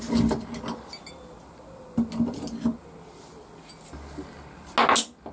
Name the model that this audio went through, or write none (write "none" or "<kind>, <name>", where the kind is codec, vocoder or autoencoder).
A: none